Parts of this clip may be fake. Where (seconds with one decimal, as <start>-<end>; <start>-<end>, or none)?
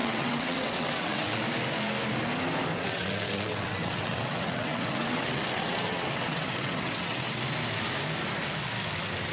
0.0-1.4; 2.7-7.4